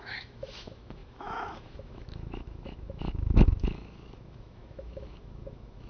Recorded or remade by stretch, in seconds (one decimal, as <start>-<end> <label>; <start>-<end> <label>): 0.0-5.9 remade